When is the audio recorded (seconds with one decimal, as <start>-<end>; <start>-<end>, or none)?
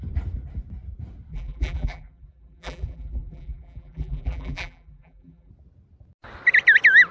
0.0-1.3; 5.5-7.1